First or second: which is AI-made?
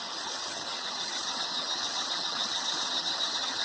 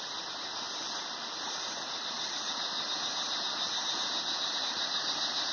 first